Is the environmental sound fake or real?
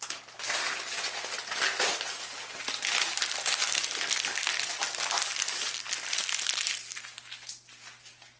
real